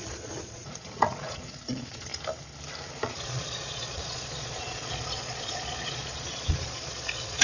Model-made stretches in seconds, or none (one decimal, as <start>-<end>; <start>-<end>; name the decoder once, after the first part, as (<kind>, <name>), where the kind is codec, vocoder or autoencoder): 0.0-2.1 (vocoder, Vocos); 2.9-7.4